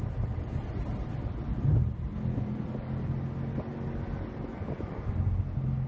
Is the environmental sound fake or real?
real